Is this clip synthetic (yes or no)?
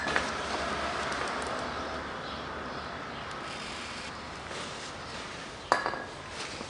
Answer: no